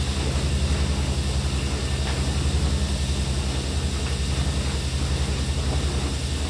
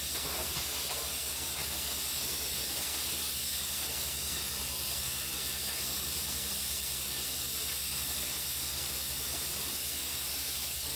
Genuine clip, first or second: first